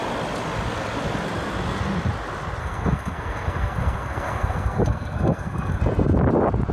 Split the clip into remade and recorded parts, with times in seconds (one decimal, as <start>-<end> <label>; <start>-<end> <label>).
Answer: 0.0-2.6 recorded; 2.6-5.8 remade; 5.8-6.7 recorded